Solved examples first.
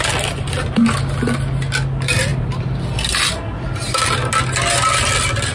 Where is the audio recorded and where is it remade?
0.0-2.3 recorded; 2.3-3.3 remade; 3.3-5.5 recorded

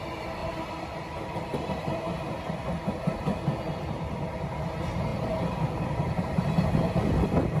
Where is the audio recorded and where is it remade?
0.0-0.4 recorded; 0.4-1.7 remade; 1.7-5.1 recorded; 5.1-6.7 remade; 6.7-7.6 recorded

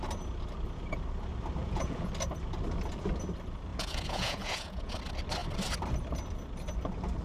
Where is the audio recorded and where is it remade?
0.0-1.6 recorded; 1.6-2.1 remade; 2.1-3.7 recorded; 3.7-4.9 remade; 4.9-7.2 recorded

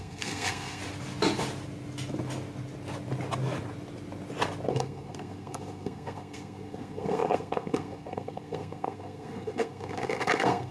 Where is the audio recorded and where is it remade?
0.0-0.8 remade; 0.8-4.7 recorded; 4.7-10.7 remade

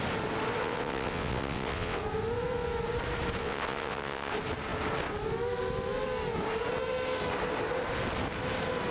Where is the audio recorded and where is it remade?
0.0-0.6 recorded; 0.6-2.0 remade; 2.0-3.4 recorded; 3.4-4.3 remade; 4.3-8.9 recorded

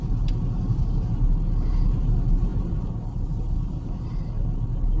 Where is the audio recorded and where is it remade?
0.0-5.0 recorded

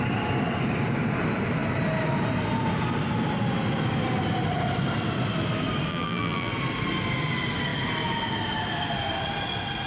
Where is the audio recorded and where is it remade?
0.0-5.9 recorded; 5.9-6.5 remade; 6.5-9.9 recorded

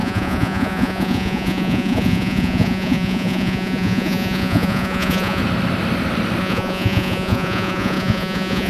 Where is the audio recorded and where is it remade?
0.0-5.4 remade; 5.4-6.4 recorded; 6.4-8.7 remade